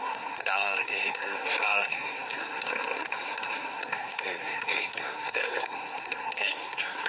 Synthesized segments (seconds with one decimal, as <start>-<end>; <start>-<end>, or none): 0.0-7.1